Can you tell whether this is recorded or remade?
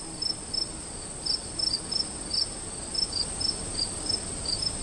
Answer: recorded